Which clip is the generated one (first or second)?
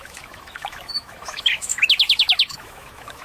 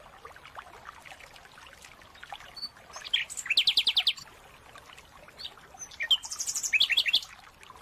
first